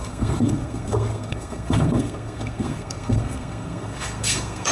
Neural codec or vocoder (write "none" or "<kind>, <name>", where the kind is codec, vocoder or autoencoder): codec, SNAC